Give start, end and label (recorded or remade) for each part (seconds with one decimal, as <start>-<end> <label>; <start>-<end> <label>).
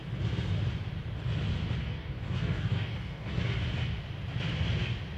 0.0-1.8 recorded; 1.8-3.4 remade; 3.4-5.2 recorded